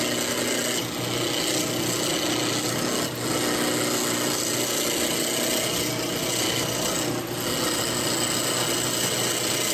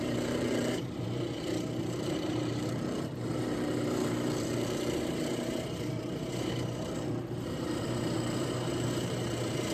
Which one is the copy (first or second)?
second